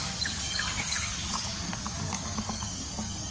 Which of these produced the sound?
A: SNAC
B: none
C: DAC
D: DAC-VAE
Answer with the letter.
C